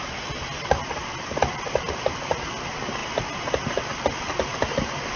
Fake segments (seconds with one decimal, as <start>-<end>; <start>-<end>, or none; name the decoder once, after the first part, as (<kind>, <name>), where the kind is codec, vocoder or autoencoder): none